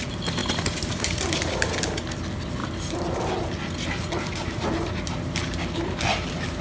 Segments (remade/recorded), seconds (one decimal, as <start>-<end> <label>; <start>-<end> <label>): 0.0-6.6 recorded